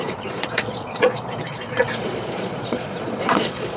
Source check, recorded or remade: remade